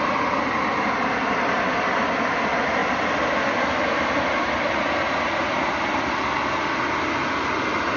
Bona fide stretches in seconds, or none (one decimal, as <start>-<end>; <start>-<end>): 0.0-8.0